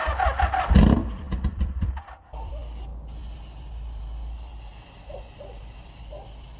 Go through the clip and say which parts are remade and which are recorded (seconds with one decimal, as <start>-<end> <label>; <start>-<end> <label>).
0.0-1.0 recorded; 1.0-2.5 remade; 2.5-6.6 recorded